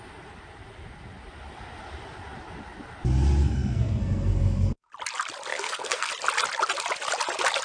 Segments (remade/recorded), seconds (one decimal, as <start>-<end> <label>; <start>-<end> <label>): 0.0-3.4 recorded; 3.4-4.9 remade; 4.9-5.5 recorded; 5.5-6.1 remade; 6.1-7.6 recorded